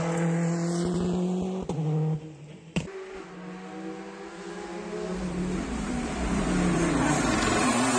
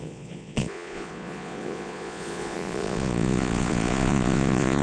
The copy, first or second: second